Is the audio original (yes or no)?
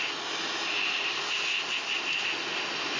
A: yes